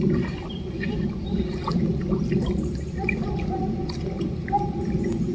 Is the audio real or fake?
real